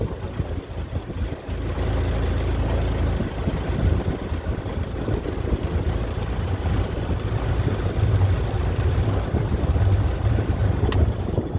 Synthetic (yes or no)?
no